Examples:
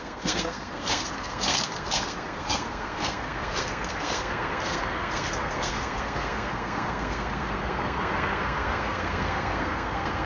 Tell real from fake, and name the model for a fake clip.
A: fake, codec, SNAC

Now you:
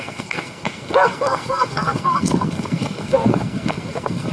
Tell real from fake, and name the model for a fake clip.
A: fake, codec, SNAC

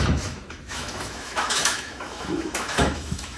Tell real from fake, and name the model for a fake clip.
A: fake, autoencoder, DAC-VAE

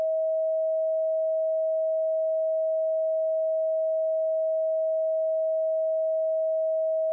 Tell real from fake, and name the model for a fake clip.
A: real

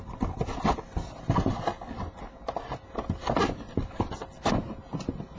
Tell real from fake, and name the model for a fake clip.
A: real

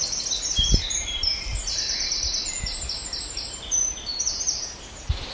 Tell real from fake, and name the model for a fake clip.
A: fake, vocoder, BigVGAN v2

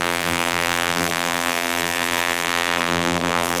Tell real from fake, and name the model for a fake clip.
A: fake, vocoder, BigVGAN v2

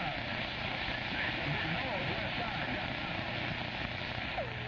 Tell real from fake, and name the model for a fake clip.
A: real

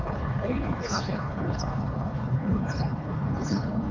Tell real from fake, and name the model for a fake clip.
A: fake, codec, HILCodec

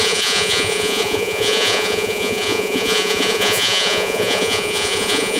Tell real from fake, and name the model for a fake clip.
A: fake, vocoder, Vocos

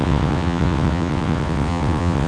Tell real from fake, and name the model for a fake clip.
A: fake, vocoder, WaveNeXt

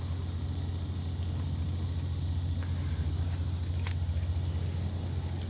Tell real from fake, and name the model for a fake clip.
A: real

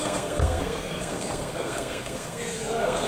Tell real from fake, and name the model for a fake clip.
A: fake, codec, SNAC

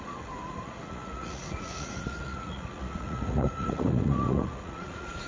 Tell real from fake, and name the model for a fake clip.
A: fake, vocoder, Vocos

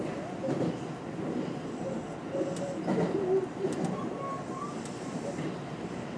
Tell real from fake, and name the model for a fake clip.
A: real